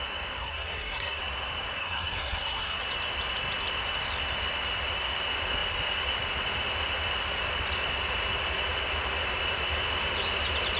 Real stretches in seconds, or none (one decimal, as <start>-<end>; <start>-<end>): 0.0-0.4; 1.2-1.8; 2.8-10.8